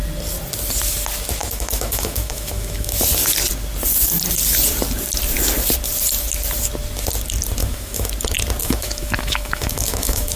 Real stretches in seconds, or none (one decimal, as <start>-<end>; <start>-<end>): 0.0-1.4; 3.0-7.6; 8.1-8.6